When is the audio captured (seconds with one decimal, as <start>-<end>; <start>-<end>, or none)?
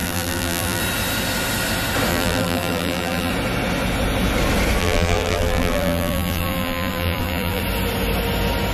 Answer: 0.8-2.1; 3.3-4.8; 7.6-8.7